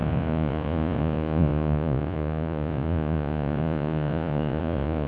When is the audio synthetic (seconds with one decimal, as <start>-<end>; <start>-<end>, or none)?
0.0-5.1